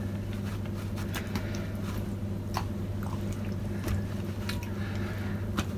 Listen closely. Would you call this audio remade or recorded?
recorded